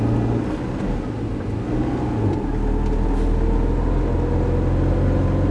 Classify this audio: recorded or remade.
recorded